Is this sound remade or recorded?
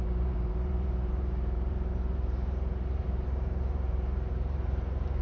remade